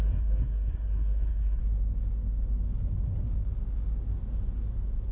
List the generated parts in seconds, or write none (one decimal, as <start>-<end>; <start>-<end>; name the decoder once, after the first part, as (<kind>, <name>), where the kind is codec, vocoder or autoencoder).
0.0-1.6 (codec, SNAC)